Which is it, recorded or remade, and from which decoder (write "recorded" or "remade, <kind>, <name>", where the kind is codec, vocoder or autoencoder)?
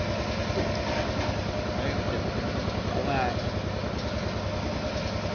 recorded